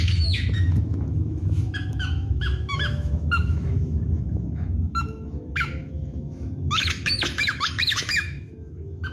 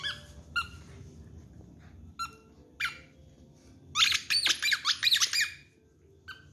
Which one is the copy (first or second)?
first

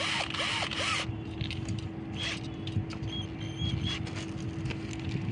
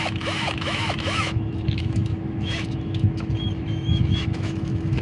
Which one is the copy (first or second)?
second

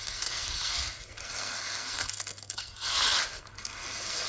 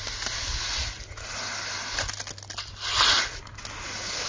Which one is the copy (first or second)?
first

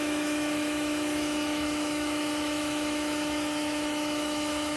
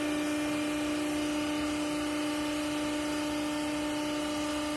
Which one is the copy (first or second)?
first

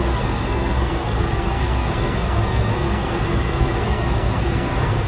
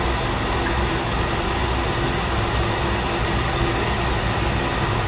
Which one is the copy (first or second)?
first